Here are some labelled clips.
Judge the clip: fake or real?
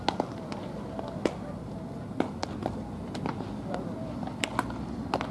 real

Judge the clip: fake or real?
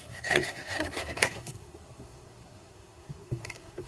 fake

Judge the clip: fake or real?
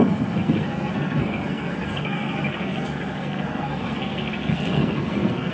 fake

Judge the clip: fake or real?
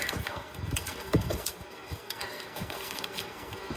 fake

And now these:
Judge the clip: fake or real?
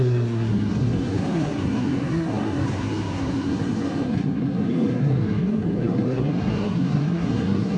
fake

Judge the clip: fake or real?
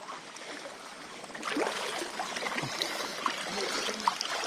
real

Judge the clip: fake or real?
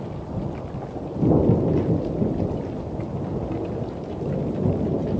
real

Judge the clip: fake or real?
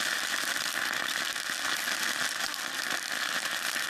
real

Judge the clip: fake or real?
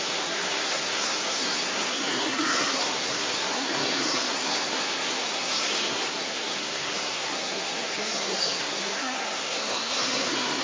fake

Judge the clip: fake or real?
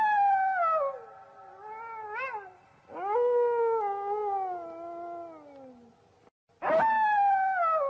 real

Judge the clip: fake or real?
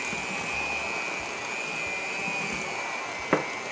real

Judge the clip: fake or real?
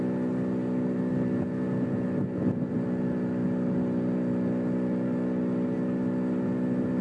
real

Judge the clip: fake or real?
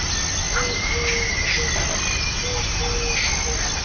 real